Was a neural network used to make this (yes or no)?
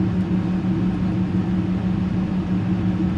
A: no